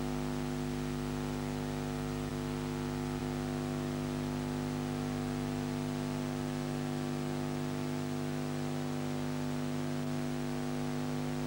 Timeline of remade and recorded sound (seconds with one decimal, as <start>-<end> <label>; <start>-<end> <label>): 0.0-11.5 recorded